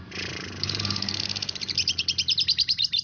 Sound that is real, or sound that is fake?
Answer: fake